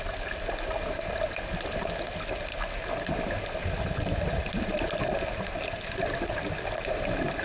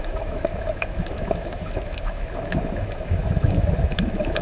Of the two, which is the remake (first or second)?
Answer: second